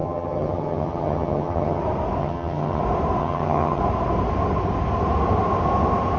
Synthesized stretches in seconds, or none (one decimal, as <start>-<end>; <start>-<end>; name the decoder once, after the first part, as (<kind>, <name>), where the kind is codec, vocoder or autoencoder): 0.0-1.8 (vocoder, HiFi-GAN); 2.2-2.8; 3.2-3.8